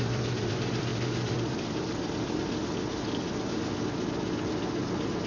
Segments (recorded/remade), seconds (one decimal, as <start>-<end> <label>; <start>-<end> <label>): 0.0-5.3 recorded